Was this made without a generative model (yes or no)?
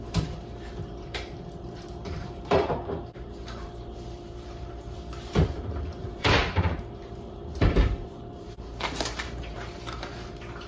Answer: no